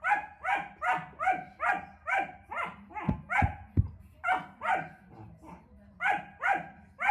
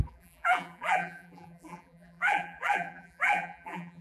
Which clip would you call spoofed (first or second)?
second